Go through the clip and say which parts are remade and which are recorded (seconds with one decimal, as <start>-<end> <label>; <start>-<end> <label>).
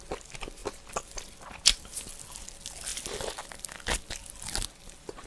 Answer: 0.0-5.3 recorded